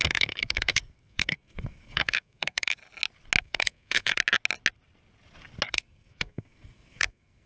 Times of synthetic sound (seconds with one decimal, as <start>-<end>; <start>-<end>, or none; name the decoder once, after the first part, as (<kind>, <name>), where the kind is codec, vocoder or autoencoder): 0.0-2.8 (codec, SNAC); 3.4-4.2; 5.7-7.5